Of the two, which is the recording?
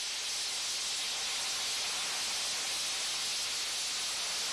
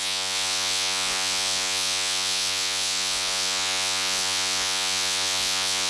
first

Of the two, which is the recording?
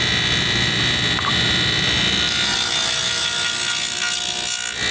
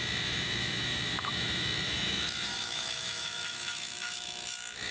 first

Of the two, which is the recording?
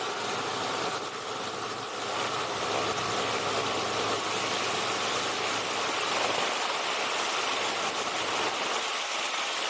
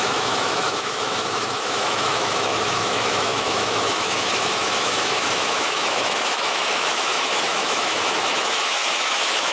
first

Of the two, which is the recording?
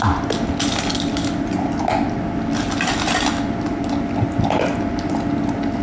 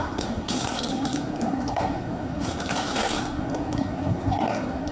first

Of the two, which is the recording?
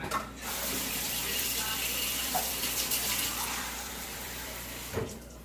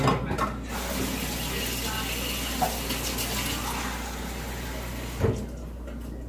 second